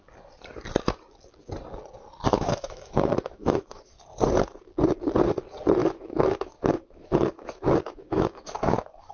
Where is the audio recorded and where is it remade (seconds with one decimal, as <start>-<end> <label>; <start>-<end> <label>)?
0.0-2.3 recorded; 2.3-3.9 remade; 3.9-5.8 recorded; 5.8-9.1 remade